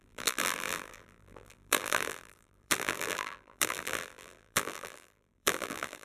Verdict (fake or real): fake